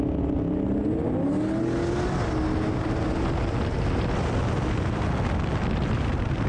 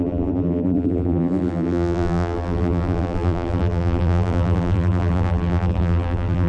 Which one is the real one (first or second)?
first